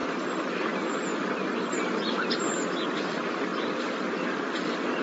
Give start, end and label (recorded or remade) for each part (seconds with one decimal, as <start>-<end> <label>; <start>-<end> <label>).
0.0-5.0 recorded